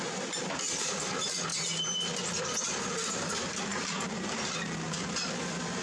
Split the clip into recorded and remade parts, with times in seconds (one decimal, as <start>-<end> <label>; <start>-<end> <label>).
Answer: 0.0-5.8 remade